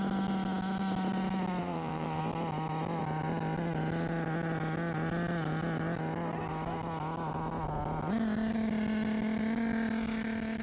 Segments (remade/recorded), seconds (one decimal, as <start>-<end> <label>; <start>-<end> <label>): 0.0-1.6 recorded; 1.6-2.2 remade; 2.2-10.6 recorded